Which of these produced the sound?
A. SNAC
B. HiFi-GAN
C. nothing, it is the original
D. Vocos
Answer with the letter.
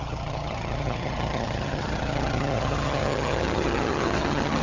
B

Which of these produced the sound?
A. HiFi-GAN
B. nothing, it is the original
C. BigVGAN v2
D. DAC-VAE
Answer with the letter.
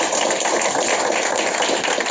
B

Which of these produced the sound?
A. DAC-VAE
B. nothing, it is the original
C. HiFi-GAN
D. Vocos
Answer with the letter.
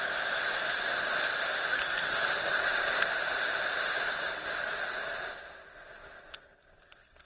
B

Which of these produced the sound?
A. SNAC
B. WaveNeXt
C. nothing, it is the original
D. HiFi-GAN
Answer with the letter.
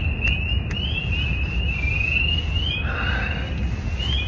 C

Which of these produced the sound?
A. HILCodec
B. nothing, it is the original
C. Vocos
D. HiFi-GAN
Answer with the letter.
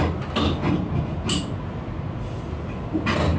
B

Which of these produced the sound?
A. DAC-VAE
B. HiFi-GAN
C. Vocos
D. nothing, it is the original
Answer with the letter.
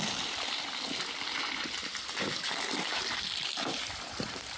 D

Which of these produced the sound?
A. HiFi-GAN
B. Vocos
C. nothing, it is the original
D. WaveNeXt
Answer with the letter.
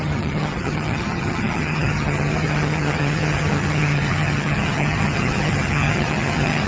A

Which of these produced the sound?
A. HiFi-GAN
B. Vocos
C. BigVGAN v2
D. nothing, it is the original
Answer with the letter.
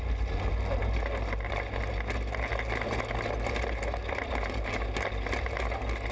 D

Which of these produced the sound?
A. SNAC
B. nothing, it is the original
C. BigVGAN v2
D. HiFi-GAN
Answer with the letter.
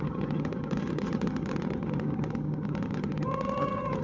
D